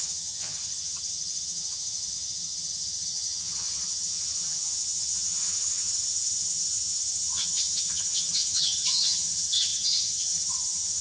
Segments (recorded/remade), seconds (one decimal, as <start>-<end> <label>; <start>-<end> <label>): 0.0-11.0 remade